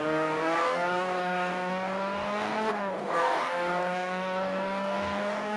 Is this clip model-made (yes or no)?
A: yes